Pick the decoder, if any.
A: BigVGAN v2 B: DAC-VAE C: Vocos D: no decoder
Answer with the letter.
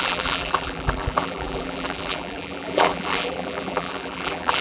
A